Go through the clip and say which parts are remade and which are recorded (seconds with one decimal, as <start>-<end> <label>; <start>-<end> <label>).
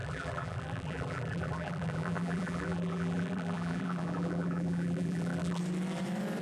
0.0-5.6 remade; 5.6-6.4 recorded